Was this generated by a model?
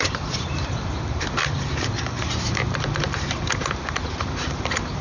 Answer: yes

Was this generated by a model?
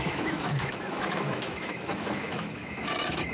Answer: yes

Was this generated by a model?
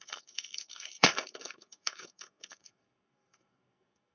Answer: yes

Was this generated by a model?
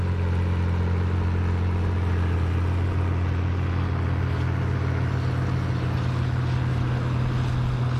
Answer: no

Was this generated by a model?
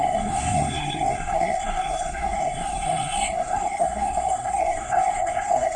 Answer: yes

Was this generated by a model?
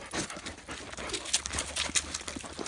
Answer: no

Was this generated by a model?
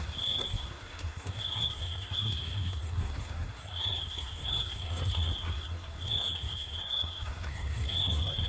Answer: yes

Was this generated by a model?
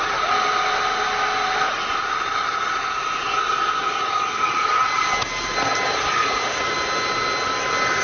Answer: no